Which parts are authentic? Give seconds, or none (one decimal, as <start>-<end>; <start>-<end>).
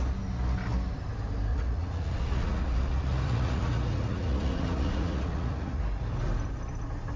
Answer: 0.0-1.5; 5.8-7.2